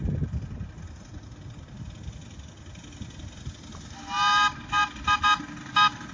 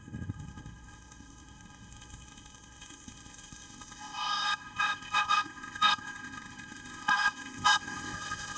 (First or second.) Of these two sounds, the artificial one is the second